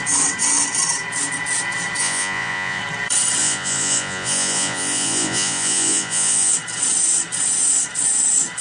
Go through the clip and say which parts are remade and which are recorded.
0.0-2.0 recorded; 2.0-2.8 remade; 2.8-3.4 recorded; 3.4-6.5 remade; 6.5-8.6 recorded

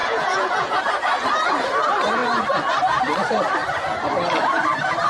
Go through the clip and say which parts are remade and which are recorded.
0.0-0.8 remade; 0.8-5.1 recorded

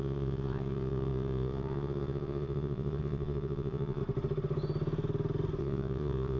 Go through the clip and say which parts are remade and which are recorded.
0.0-4.0 remade; 4.0-5.6 recorded; 5.6-6.4 remade

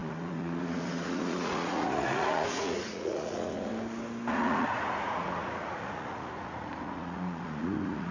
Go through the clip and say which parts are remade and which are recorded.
0.0-3.7 remade; 3.7-4.3 recorded; 4.3-8.1 remade

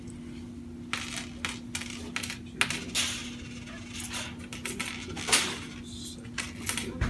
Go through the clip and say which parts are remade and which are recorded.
0.0-7.1 recorded